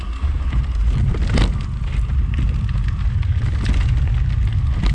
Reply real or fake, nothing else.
real